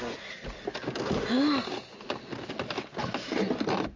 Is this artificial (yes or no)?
no